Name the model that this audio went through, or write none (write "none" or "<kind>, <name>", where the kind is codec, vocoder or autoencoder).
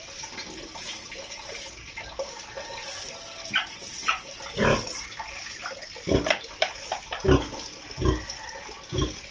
none